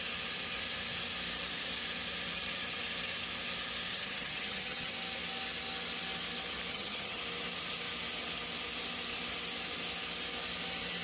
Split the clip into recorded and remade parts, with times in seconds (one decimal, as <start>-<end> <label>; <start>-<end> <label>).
0.0-3.9 recorded; 3.9-4.9 remade; 4.9-6.7 recorded; 6.7-7.2 remade; 7.2-11.0 recorded

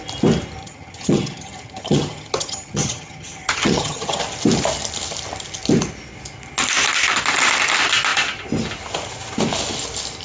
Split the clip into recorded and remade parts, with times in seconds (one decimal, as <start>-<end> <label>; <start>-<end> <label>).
0.0-0.6 recorded; 0.6-4.2 remade; 4.2-10.2 recorded

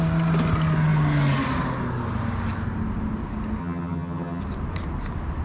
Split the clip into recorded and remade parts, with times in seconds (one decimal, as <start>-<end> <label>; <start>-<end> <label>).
0.0-3.6 recorded; 3.6-4.4 remade; 4.4-5.4 recorded